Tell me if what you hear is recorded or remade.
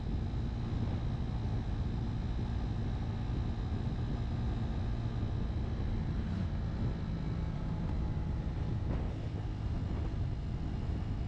recorded